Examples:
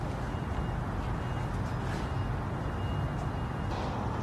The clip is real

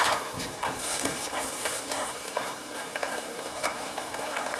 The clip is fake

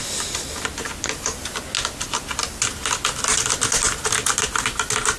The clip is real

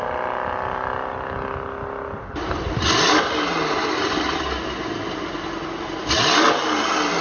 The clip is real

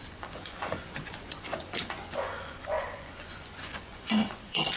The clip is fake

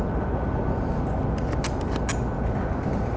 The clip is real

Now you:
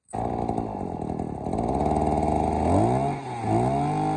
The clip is real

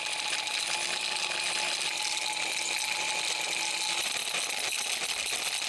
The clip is real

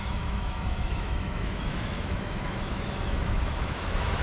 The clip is fake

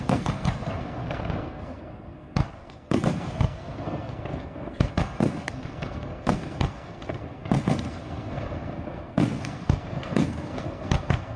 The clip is fake